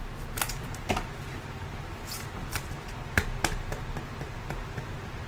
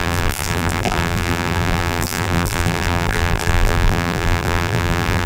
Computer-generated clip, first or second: second